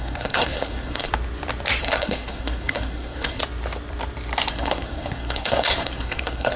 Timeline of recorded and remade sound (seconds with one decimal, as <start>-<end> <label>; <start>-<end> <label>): 0.0-1.1 remade; 1.1-1.8 recorded; 1.8-3.4 remade; 3.4-4.5 recorded; 4.5-6.6 remade

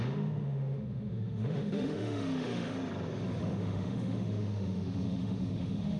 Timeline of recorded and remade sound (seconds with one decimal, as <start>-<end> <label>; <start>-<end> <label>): 0.0-2.8 remade; 2.8-3.4 recorded; 3.4-6.0 remade

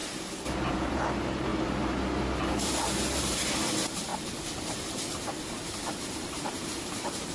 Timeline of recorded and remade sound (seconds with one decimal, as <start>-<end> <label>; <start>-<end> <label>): 0.0-0.7 recorded; 0.7-7.3 remade